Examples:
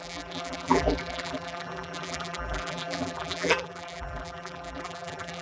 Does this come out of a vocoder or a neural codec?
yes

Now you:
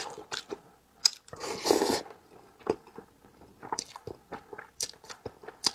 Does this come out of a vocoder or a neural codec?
no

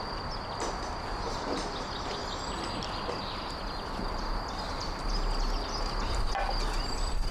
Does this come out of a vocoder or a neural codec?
no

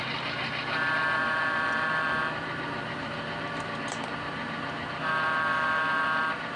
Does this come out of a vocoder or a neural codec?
yes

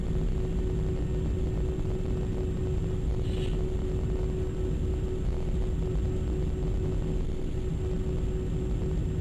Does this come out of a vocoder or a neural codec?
no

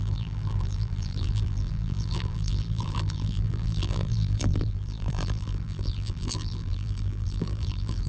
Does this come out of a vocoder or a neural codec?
yes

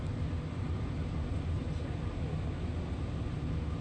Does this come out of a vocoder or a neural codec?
no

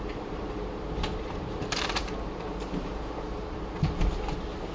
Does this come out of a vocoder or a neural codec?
yes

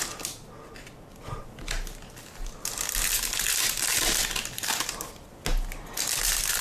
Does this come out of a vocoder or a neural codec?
no